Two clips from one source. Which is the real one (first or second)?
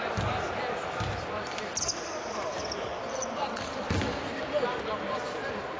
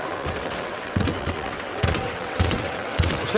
first